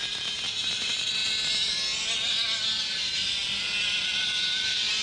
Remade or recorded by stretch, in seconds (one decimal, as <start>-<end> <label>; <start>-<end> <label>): 0.0-1.2 remade; 1.2-2.8 recorded; 2.8-3.4 remade; 3.4-4.0 recorded; 4.0-5.0 remade

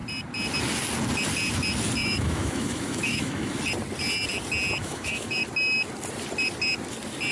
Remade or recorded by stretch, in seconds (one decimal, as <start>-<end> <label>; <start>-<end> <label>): 0.0-2.0 recorded; 2.0-3.6 remade; 3.6-4.8 recorded; 4.8-5.4 remade; 5.4-7.3 recorded

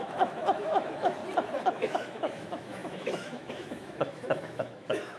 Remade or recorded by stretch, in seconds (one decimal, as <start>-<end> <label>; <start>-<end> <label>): 0.0-1.2 remade; 1.2-1.7 recorded; 1.7-5.2 remade

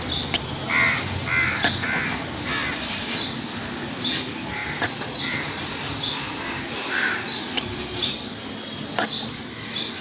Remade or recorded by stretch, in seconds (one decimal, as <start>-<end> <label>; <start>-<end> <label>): 0.0-10.0 recorded